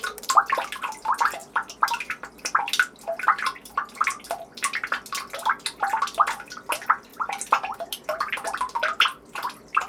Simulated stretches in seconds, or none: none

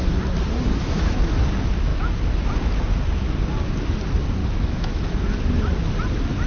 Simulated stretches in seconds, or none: 0.7-1.4 (autoencoder, DAC-VAE); 4.4-5.1

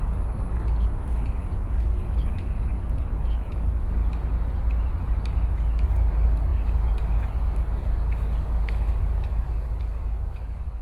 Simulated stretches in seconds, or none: 0.0-4.0 (codec, DAC); 5.7-10.8